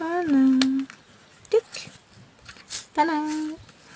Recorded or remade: recorded